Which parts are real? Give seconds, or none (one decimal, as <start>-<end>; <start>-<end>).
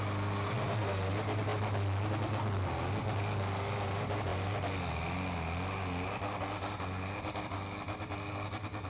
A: 0.0-8.9